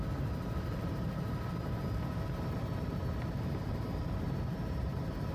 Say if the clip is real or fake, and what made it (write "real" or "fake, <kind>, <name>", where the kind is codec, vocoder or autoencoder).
fake, vocoder, BigVGAN v2